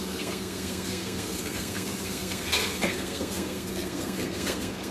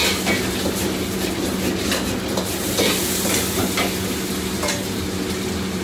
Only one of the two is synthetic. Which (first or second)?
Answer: first